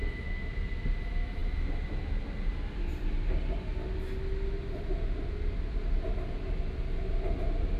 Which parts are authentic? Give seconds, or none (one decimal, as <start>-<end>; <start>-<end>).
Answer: 0.0-7.8